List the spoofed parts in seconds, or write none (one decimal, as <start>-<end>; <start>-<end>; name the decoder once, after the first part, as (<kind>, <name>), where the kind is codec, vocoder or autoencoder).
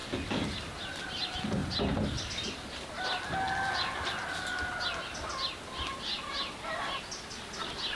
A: none